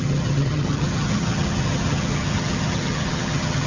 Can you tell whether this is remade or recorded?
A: remade